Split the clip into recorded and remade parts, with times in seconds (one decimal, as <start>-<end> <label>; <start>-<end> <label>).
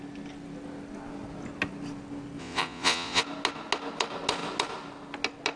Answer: 0.0-2.4 recorded; 2.4-3.2 remade; 3.2-5.6 recorded